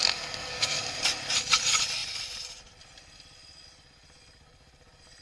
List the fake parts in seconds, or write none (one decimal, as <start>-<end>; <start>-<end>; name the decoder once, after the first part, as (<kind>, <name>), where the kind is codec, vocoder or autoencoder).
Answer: 0.0-1.0 (codec, SNAC)

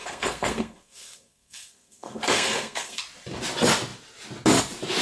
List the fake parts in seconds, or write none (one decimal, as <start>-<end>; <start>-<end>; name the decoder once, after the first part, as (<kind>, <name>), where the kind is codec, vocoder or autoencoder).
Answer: 0.0-3.0 (codec, SNAC)

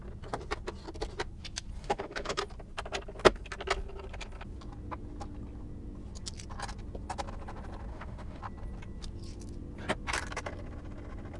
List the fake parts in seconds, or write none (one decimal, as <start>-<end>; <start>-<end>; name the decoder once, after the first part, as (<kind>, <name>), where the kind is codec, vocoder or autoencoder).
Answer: 1.8-2.4 (autoencoder, DAC-VAE); 7.9-8.4

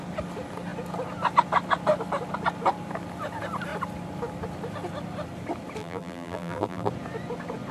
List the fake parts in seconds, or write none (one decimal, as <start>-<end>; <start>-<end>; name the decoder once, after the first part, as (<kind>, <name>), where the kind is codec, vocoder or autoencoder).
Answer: 5.8-6.9 (vocoder, BigVGAN v2)